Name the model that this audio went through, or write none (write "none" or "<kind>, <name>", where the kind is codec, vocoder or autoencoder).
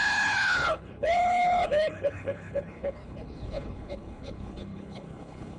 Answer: codec, HILCodec